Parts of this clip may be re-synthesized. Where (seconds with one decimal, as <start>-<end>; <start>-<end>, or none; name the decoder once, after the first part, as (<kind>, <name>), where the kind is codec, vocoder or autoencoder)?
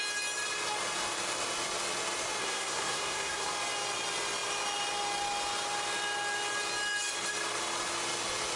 2.4-3.5 (codec, SNAC)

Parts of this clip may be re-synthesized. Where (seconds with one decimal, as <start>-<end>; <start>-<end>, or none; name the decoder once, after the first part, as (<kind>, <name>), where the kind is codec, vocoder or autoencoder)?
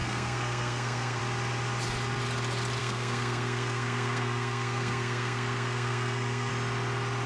0.0-1.2 (codec, SNAC); 2.8-6.5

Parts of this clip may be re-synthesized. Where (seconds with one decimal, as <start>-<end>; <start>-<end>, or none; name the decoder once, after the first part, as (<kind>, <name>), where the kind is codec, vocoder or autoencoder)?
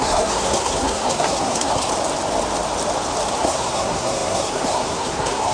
0.0-1.9 (codec, SNAC); 3.4-5.5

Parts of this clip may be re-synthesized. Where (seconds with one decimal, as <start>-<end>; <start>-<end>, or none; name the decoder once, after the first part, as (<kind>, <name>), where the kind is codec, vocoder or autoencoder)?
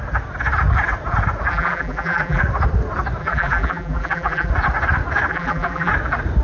1.5-2.4 (vocoder, BigVGAN v2); 3.2-4.5; 5.3-5.9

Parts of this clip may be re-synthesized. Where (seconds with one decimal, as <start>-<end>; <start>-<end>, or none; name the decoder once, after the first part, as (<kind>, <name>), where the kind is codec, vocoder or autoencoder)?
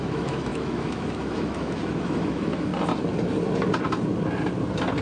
0.0-2.7 (autoencoder, DAC-VAE)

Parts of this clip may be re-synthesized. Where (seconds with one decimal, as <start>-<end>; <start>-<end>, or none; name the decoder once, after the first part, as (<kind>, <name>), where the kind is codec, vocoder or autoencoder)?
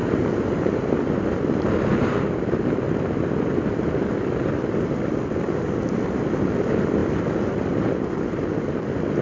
none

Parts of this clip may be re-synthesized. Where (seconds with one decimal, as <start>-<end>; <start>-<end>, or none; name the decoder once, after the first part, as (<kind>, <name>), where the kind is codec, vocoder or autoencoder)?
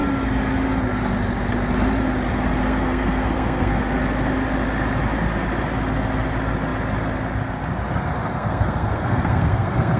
2.6-3.8 (codec, SNAC); 8.3-10.0